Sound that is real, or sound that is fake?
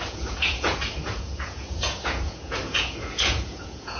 fake